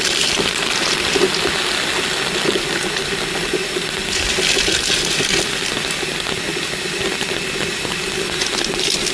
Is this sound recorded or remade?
recorded